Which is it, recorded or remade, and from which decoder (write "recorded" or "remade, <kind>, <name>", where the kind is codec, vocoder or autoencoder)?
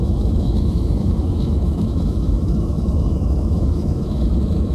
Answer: remade, autoencoder, DAC-VAE